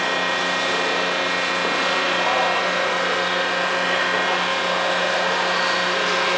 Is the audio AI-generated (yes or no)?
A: no